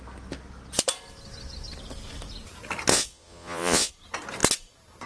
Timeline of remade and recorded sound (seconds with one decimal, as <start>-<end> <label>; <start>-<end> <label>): 0.0-2.9 recorded; 2.9-3.9 remade; 3.9-5.1 recorded